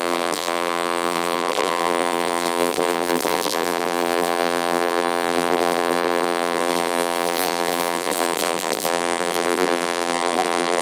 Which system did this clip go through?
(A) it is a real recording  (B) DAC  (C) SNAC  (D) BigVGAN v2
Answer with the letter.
D